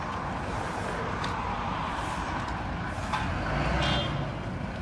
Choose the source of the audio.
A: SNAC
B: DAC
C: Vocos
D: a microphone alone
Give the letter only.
D